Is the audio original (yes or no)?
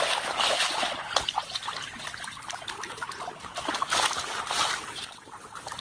yes